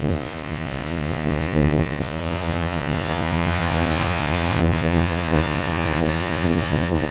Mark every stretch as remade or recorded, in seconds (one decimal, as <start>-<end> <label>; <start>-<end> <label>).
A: 0.0-7.1 remade